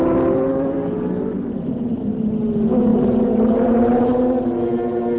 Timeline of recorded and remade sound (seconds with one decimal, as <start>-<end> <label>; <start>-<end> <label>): 0.0-2.9 recorded; 2.9-4.2 remade; 4.2-5.2 recorded